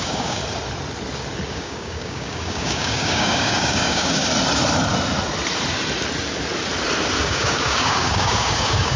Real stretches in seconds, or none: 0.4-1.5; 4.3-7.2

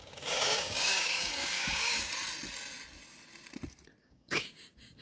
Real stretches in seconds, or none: 2.1-4.0

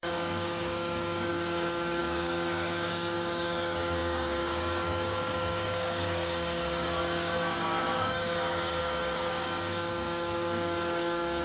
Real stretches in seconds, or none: none

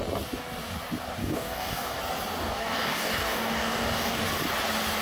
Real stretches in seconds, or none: 0.0-1.2; 2.0-2.4; 4.2-5.0

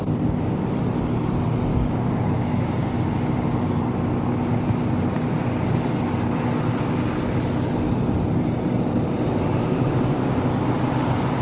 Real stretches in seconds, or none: 0.0-1.7; 3.1-9.6; 10.5-11.4

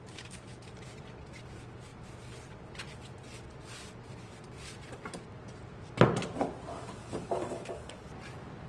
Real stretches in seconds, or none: 0.0-6.7; 8.1-8.7

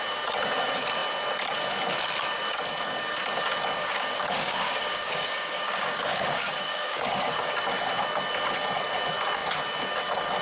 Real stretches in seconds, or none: 0.0-3.8; 7.5-10.4

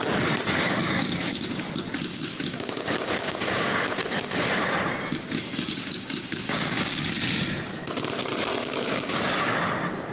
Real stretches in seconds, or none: 0.0-0.8; 1.6-2.1; 4.4-5.2; 7.1-8.5; 9.6-10.1